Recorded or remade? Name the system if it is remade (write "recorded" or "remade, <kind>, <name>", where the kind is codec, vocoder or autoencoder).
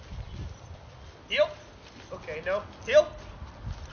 recorded